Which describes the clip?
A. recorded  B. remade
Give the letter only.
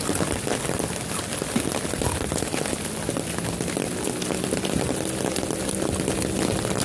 A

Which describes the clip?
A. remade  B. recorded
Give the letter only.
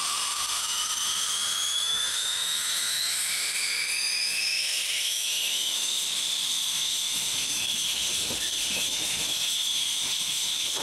A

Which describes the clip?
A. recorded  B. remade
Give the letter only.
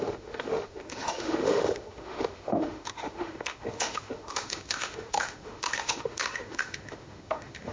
B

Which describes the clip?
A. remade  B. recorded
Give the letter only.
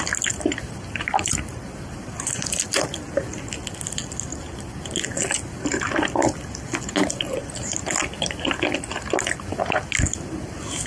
B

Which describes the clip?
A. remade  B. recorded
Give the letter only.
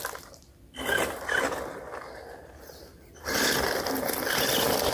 B